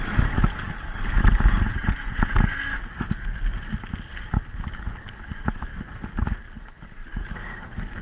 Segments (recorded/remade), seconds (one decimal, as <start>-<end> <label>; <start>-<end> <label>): 0.0-1.2 remade; 1.2-4.6 recorded; 4.6-5.7 remade; 5.7-6.6 recorded; 6.6-8.0 remade